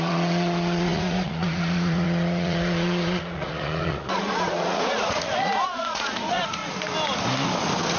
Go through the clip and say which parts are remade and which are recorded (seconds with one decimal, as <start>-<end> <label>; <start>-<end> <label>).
0.0-6.6 remade; 6.6-8.0 recorded